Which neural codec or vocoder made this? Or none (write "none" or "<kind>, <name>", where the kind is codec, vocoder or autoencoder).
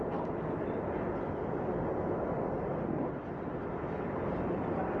none